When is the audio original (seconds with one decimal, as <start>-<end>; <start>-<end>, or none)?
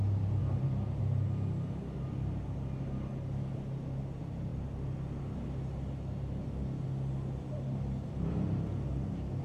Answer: 0.0-0.4; 1.0-9.4